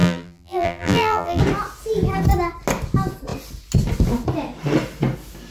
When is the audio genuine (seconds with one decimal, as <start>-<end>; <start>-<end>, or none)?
1.4-5.5